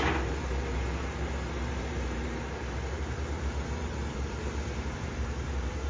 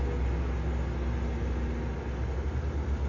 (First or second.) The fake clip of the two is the first